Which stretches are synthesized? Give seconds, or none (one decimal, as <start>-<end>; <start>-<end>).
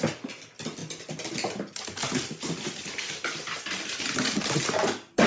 none